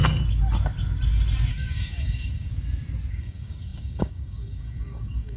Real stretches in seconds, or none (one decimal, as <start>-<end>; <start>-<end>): 0.0-1.5; 2.5-3.1